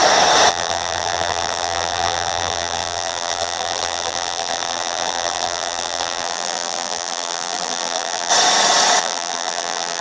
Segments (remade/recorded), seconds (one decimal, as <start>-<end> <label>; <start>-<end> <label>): 0.0-0.5 recorded; 0.5-8.3 remade; 8.3-9.0 recorded; 9.0-10.0 remade